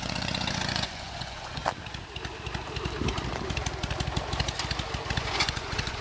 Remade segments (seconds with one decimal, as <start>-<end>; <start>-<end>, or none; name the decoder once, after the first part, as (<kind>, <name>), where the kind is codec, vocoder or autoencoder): 0.0-1.6 (vocoder, Vocos); 5.2-6.0